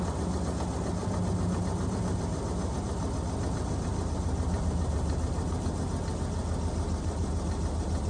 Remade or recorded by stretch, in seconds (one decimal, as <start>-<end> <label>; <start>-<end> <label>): 0.0-1.0 recorded; 1.0-5.8 remade; 5.8-6.4 recorded; 6.4-7.2 remade; 7.2-8.1 recorded